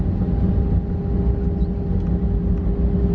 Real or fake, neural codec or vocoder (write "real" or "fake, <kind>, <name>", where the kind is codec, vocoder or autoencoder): real